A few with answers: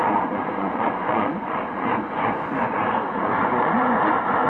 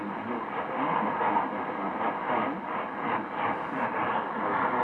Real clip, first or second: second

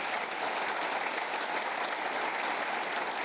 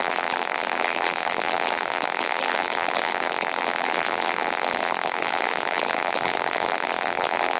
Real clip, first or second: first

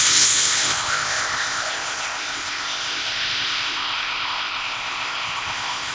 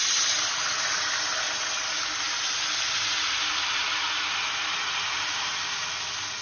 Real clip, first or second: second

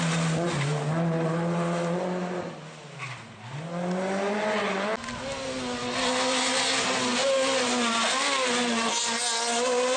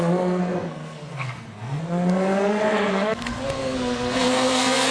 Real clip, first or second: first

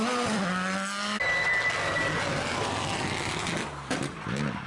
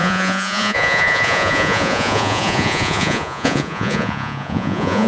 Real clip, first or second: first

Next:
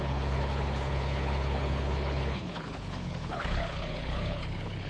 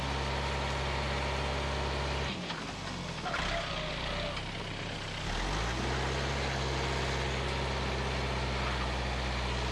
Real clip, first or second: second